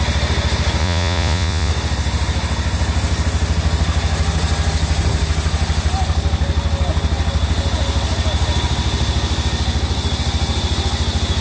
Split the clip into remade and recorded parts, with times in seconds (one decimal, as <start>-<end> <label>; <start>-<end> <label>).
0.0-0.8 recorded; 0.8-1.7 remade; 1.7-11.4 recorded